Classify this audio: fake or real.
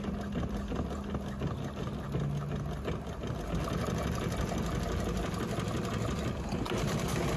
real